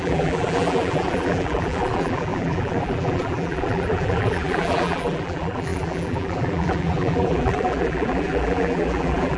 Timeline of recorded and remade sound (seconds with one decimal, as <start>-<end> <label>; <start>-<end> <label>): 0.0-9.4 remade